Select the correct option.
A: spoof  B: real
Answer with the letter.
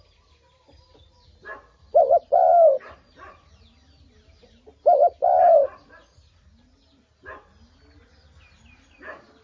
B